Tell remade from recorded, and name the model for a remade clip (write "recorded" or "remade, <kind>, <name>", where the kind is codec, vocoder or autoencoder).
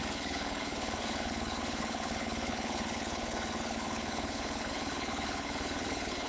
remade, codec, HILCodec